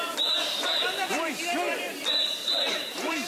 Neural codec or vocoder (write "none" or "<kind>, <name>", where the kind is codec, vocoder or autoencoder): vocoder, BigVGAN v2